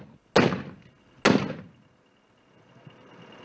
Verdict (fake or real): real